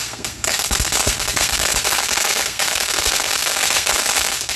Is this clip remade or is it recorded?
remade